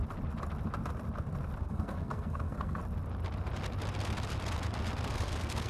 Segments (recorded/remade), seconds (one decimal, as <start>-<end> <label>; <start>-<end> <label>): 0.0-1.6 recorded; 1.6-2.8 remade; 2.8-5.1 recorded; 5.1-5.7 remade